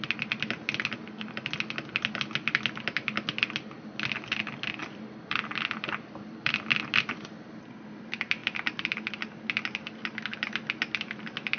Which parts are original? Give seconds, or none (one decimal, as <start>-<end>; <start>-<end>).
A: 0.0-4.8; 7.3-8.4; 9.1-11.6